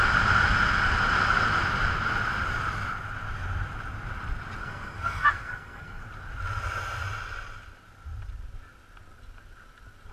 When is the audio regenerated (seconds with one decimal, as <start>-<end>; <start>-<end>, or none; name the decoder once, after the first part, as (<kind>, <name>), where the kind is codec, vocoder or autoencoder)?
4.6-6.0 (codec, SNAC)